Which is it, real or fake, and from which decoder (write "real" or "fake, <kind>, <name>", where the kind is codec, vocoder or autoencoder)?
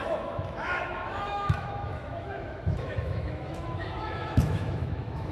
fake, autoencoder, DAC-VAE